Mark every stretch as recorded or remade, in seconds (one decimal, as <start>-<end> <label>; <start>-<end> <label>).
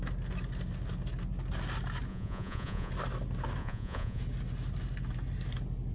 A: 0.0-2.1 recorded; 2.1-2.9 remade; 2.9-3.6 recorded; 3.6-4.2 remade; 4.2-5.9 recorded